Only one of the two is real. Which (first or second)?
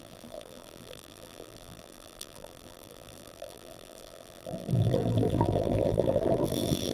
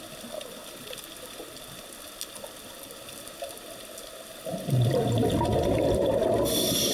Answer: second